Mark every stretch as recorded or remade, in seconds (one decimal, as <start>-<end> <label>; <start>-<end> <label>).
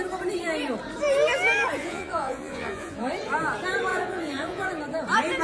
0.0-1.8 recorded; 1.8-3.1 remade; 3.1-3.9 recorded; 3.9-4.7 remade; 4.7-5.4 recorded